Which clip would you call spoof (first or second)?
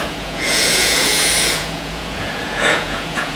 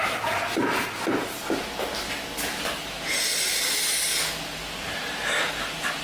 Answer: first